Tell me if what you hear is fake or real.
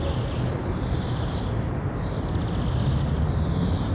real